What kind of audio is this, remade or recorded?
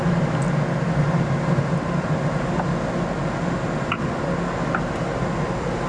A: recorded